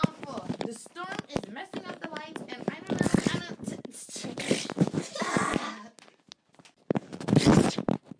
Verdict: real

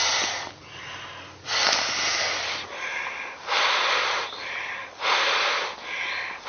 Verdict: real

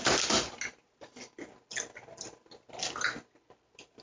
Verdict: real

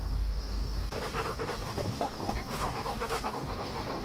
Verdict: fake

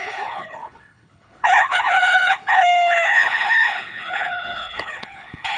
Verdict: fake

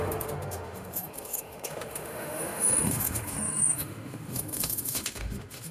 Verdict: fake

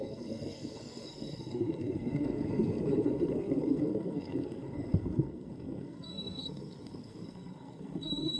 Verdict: fake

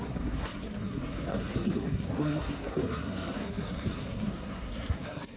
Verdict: fake